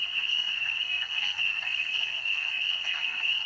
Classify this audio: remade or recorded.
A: remade